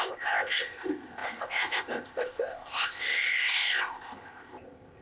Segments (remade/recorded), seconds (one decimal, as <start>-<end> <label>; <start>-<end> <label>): 0.0-5.0 remade